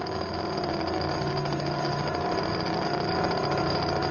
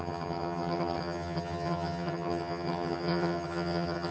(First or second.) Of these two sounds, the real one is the first